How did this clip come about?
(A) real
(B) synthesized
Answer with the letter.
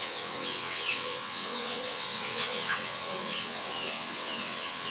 B